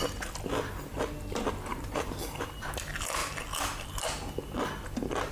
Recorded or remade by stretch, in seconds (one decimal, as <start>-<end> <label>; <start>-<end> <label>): 0.0-1.7 recorded; 1.7-2.7 remade; 2.7-5.3 recorded